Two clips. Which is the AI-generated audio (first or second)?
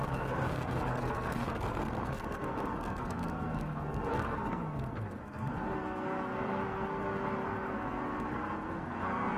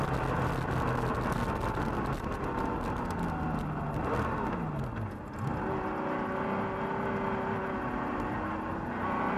first